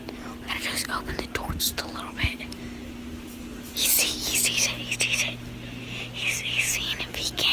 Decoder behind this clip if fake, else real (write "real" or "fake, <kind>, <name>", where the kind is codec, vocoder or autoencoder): real